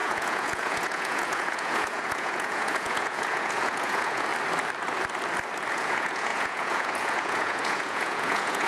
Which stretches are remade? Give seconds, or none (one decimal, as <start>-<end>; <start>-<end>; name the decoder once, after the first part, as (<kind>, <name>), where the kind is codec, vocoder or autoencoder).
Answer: 0.0-4.3 (vocoder, Vocos); 5.7-8.7